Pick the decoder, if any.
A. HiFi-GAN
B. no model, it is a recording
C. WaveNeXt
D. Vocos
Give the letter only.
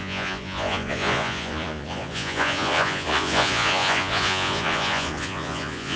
D